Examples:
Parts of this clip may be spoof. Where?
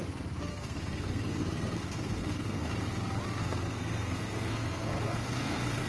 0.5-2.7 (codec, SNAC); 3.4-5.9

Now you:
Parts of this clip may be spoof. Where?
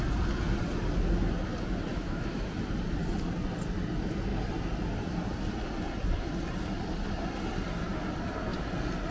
1.9-2.5 (autoencoder, DAC-VAE)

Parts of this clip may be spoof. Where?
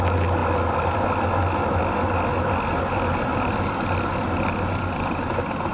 none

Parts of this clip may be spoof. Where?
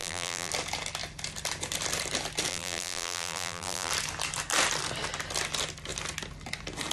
0.0-0.5 (vocoder, BigVGAN v2); 2.5-3.9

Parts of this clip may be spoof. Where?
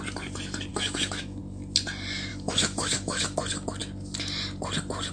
0.7-1.4 (autoencoder, DAC-VAE); 2.3-3.2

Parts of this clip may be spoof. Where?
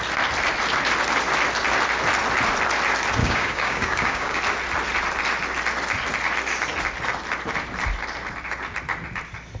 3.2-4.4 (codec, DAC)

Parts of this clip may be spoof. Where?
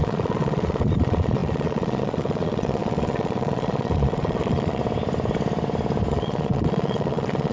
0.0-4.8 (vocoder, Vocos); 6.1-7.5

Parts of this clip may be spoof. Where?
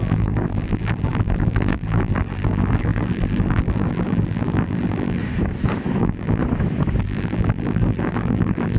0.0-5.2 (vocoder, BigVGAN v2); 6.0-6.4; 7.0-8.8